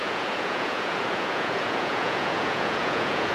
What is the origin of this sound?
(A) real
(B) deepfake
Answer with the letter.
B